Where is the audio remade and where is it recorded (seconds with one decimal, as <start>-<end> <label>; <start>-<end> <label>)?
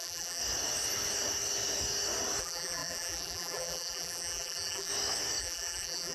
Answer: 0.0-0.4 remade; 0.4-2.4 recorded; 2.4-4.9 remade; 4.9-5.4 recorded; 5.4-6.1 remade